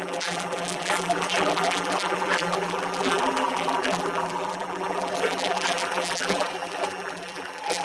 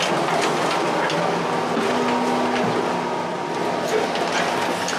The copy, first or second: first